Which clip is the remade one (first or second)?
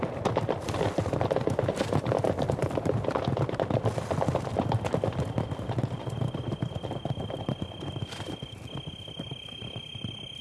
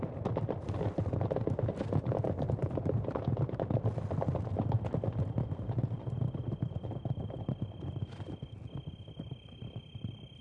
first